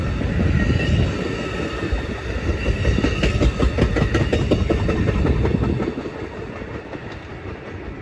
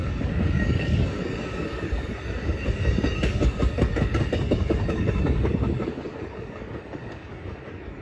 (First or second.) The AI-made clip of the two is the second